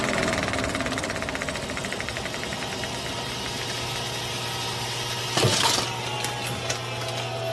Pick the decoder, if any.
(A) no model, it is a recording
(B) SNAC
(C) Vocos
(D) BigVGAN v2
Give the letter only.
A